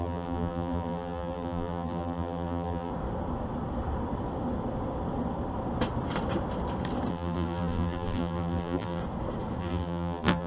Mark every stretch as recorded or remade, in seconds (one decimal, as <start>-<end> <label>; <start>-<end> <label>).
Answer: 0.0-2.9 remade; 2.9-7.1 recorded; 7.1-9.0 remade; 9.0-9.6 recorded; 9.6-10.5 remade